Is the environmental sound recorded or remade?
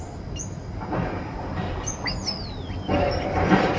recorded